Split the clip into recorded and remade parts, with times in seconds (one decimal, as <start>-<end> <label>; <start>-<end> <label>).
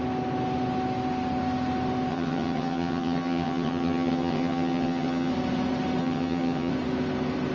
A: 0.0-2.1 recorded; 2.1-5.3 remade; 5.3-6.0 recorded; 6.0-6.7 remade; 6.7-7.5 recorded